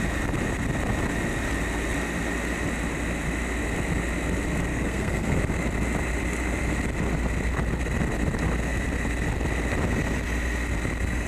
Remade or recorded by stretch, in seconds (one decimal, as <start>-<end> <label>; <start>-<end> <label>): 0.0-4.7 recorded; 4.7-5.4 remade; 5.4-11.3 recorded